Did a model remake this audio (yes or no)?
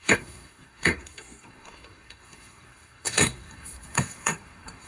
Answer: yes